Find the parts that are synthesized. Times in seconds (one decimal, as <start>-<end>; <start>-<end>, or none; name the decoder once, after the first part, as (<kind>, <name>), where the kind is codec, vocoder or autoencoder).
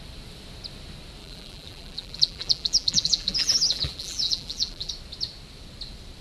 1.2-4.9 (vocoder, BigVGAN v2)